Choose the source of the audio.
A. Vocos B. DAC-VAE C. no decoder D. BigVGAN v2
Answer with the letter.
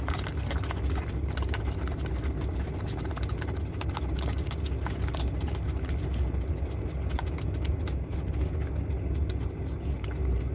C